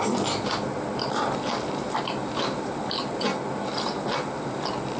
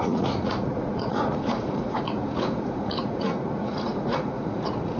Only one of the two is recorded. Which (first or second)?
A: first